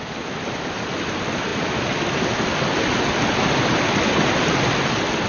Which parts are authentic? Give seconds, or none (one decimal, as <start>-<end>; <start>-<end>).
0.0-5.3